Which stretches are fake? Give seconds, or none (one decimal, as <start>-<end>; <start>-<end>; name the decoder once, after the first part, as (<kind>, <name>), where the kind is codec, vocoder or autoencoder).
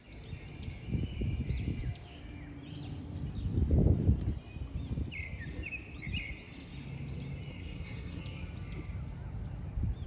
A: 7.5-8.2 (codec, SNAC)